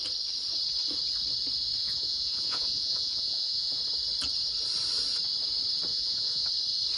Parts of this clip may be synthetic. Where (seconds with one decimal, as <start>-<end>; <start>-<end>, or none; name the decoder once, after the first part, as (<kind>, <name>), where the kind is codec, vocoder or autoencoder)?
1.8-3.8 (vocoder, Vocos); 5.9-6.5